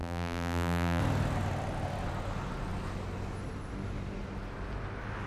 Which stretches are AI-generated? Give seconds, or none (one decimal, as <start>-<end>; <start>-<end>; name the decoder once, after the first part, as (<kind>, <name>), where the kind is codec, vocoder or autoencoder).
0.0-1.0 (vocoder, BigVGAN v2)